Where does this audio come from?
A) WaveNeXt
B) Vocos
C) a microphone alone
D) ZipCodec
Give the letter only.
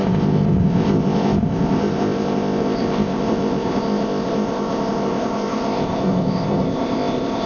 D